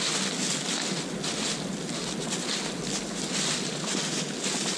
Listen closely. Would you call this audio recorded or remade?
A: recorded